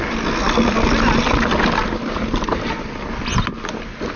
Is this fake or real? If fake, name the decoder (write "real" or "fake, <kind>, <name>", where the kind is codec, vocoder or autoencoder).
real